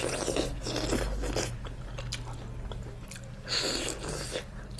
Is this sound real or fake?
real